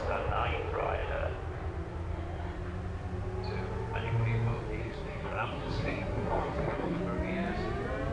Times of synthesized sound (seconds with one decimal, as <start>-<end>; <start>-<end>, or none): 4.8-7.0